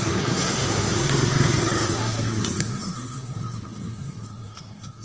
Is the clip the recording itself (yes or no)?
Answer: no